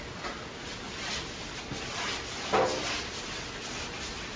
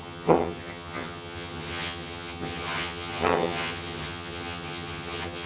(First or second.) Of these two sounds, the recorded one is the first